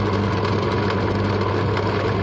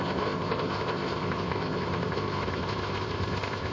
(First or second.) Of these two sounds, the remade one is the second